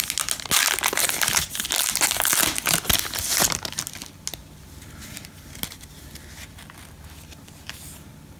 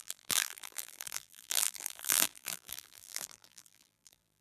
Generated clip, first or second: second